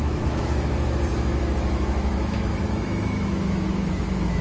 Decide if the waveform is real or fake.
fake